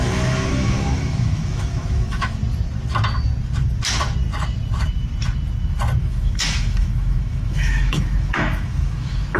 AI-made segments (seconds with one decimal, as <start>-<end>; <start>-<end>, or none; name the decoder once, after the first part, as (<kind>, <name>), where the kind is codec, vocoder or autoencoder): 0.0-2.4 (autoencoder, DAC-VAE); 6.0-9.4